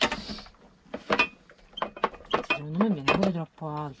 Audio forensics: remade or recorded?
recorded